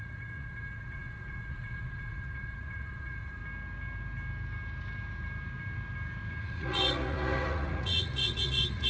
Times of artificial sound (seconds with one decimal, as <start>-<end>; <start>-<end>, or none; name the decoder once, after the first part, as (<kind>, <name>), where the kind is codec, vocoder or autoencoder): 0.0-3.4 (vocoder, Vocos); 6.4-8.9